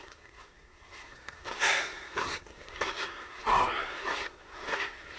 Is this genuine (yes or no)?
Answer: no